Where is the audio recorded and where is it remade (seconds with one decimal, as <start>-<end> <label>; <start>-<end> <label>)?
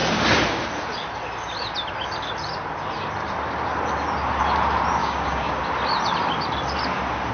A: 0.0-5.0 recorded; 5.0-5.6 remade; 5.6-7.3 recorded